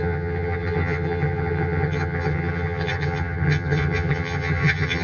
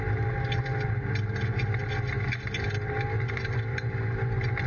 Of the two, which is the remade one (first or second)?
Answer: first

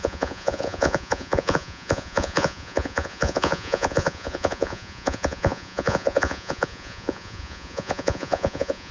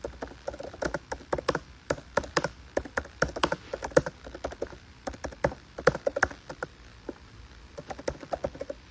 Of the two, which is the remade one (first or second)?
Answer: first